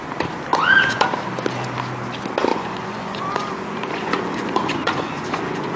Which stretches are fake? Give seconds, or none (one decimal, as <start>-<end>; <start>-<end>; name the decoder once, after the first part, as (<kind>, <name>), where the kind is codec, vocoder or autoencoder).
0.5-1.0 (vocoder, Vocos); 2.5-5.8